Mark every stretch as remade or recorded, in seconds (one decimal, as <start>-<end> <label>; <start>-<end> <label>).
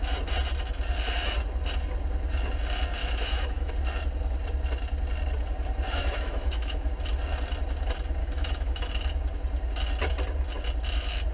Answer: 0.0-3.0 recorded; 3.0-3.7 remade; 3.7-6.0 recorded; 6.0-6.9 remade; 6.9-8.2 recorded; 8.2-8.9 remade; 8.9-11.3 recorded